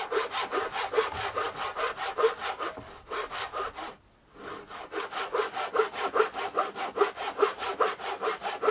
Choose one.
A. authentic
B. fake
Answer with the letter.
A